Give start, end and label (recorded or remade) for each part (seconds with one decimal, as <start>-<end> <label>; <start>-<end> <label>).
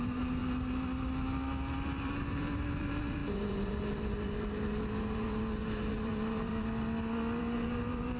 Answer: 0.0-0.4 remade; 0.4-1.9 recorded; 1.9-6.5 remade; 6.5-7.4 recorded; 7.4-8.2 remade